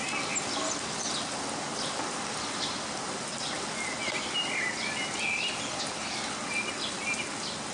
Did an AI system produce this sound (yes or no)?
no